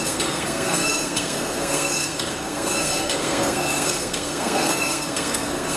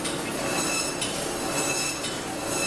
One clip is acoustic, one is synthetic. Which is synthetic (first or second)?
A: first